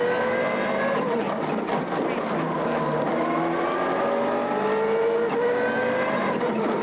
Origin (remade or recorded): recorded